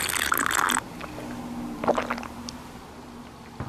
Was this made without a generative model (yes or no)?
yes